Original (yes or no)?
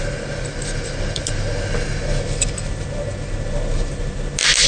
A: yes